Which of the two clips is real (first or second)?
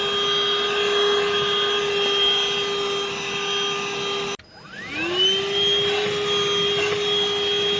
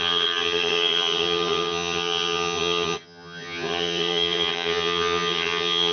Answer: first